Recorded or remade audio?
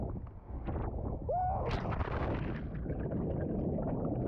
recorded